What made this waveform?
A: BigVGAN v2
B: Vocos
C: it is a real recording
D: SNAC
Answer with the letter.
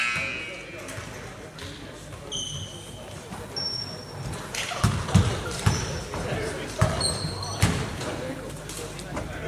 C